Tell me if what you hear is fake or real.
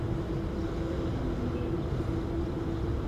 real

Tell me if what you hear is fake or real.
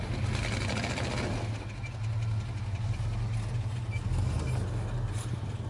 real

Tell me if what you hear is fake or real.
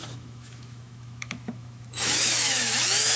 fake